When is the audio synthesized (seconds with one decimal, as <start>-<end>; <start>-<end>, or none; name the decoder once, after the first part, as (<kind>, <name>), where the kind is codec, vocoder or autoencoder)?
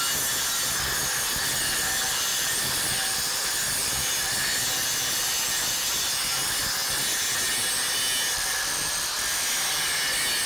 2.3-4.3 (vocoder, BigVGAN v2)